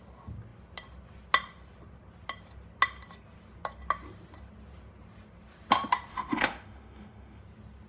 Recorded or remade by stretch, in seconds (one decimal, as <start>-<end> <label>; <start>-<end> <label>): 0.0-6.1 recorded; 6.1-7.4 remade; 7.4-7.9 recorded